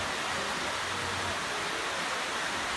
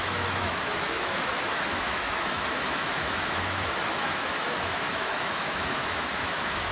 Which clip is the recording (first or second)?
first